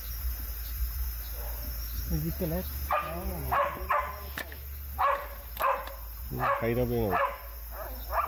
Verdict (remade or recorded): recorded